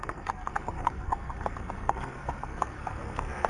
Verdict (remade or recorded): remade